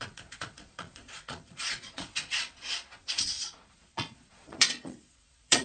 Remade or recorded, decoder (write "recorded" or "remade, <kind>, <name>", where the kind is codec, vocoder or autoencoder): remade, vocoder, Vocos